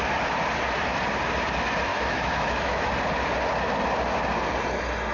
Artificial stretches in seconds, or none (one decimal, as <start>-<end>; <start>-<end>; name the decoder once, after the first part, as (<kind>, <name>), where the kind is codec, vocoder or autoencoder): 1.9-2.9 (autoencoder, DAC-VAE)